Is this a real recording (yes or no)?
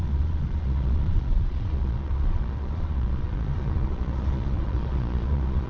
no